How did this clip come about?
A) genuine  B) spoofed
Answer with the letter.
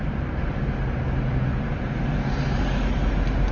A